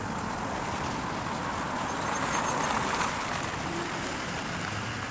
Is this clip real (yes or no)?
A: yes